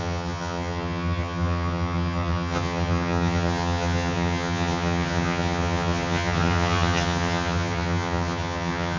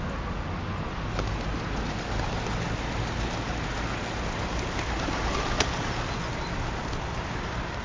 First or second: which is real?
second